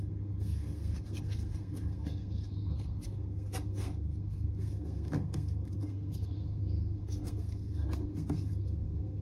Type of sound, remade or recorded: remade